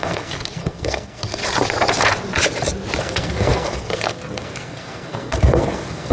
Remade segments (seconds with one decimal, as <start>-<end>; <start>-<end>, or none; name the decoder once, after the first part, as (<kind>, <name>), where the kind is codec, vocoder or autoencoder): 0.0-1.4 (codec, SNAC); 3.0-6.1